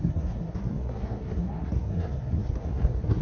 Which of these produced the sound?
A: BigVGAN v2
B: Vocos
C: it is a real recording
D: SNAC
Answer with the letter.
D